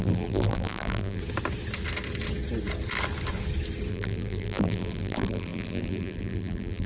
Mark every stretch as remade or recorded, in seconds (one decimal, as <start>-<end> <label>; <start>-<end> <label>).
0.0-1.2 remade; 1.2-3.9 recorded; 3.9-6.9 remade